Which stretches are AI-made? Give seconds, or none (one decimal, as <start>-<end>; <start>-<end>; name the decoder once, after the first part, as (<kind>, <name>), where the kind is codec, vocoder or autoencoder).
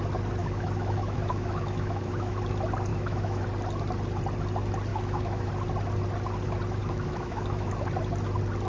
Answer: 0.4-2.4 (autoencoder, DAC-VAE); 2.9-3.4; 4.9-5.5; 6.8-7.7